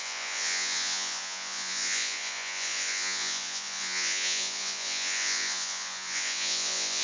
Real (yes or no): no